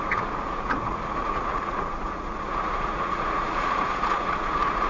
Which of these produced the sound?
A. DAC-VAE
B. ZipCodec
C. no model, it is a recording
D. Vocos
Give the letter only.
D